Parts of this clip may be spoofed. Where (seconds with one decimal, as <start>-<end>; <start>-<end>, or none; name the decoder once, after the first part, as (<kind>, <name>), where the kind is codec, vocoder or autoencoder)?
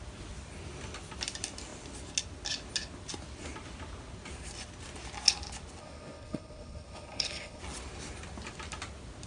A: 5.8-7.6 (codec, HILCodec)